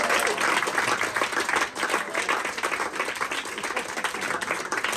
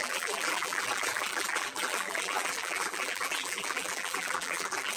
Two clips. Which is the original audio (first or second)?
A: first